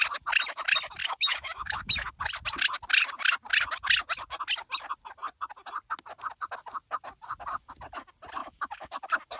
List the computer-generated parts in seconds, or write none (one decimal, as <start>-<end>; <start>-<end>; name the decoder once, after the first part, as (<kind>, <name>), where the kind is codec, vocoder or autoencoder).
1.0-2.1 (autoencoder, DAC-VAE); 8.4-9.0